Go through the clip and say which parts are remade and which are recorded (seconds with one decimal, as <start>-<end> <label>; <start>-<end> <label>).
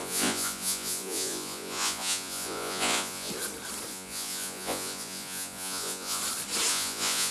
0.0-3.3 remade; 3.3-3.9 recorded; 3.9-6.2 remade; 6.2-6.7 recorded; 6.7-7.3 remade